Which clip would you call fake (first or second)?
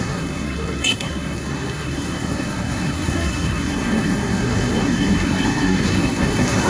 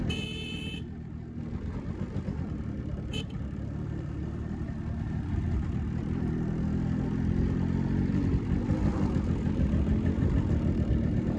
first